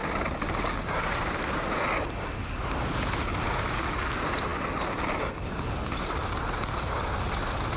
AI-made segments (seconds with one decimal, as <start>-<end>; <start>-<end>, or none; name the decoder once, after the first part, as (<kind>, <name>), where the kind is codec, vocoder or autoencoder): none